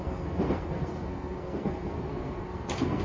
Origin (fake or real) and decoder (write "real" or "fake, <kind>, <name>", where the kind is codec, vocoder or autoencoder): fake, codec, SNAC